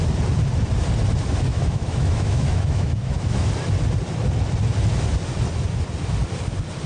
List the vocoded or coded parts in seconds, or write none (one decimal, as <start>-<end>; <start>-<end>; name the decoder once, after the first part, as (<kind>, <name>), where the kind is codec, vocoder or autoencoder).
1.5-3.5 (autoencoder, DAC-VAE)